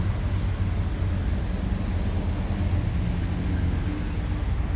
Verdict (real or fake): real